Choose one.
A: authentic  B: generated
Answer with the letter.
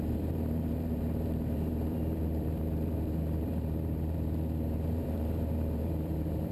B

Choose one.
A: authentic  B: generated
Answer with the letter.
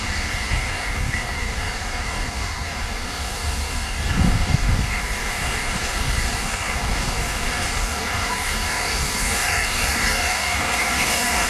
B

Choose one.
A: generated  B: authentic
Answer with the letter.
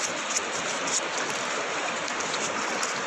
B